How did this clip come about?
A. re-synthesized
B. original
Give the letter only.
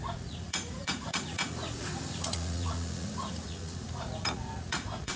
A